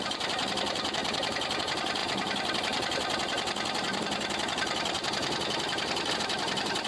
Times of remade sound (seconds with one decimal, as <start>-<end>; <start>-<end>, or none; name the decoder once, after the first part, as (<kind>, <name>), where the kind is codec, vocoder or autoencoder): none